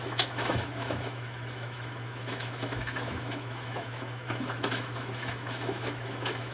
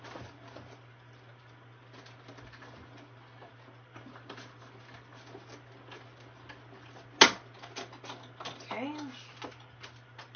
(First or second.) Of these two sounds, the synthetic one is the first